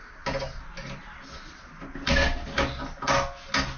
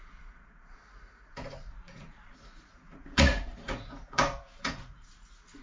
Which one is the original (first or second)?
first